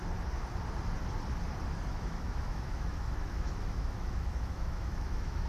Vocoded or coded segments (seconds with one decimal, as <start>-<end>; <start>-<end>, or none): 1.9-5.5